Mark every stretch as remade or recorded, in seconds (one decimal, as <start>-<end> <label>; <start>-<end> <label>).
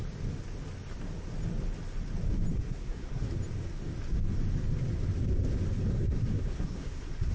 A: 0.0-2.5 recorded; 2.5-3.3 remade; 3.3-5.9 recorded; 5.9-7.3 remade